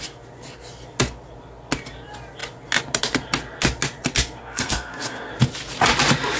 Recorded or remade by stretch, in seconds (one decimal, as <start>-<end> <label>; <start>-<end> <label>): 0.0-4.4 recorded; 4.4-5.3 remade; 5.3-6.4 recorded

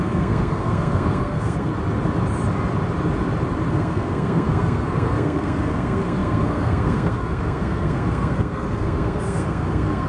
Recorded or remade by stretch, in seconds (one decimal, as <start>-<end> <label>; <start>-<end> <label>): 0.0-1.7 remade; 1.7-3.7 recorded; 3.7-10.1 remade

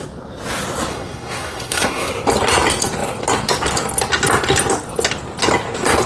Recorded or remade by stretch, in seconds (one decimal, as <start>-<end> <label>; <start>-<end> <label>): 0.0-0.9 recorded; 0.9-2.1 remade; 2.1-6.1 recorded

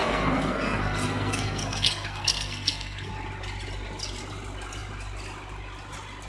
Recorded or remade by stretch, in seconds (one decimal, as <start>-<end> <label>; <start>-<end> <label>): 0.0-3.1 remade; 3.1-6.3 recorded

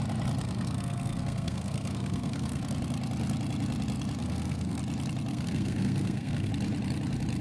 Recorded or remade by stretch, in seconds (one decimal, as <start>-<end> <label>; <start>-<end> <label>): 0.0-0.4 recorded; 0.4-2.6 remade; 2.6-4.2 recorded; 4.2-4.8 remade; 4.8-5.3 recorded; 5.3-6.5 remade; 6.5-7.4 recorded